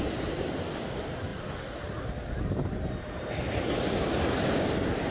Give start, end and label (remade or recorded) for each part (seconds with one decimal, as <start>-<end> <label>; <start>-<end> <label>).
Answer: 0.0-5.1 recorded